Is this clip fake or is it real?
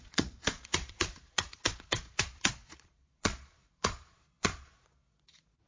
fake